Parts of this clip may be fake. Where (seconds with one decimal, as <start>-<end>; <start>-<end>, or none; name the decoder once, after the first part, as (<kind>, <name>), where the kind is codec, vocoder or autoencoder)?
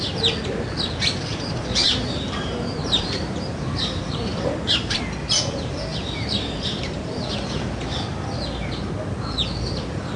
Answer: 1.3-5.0 (vocoder, BigVGAN v2); 5.9-7.3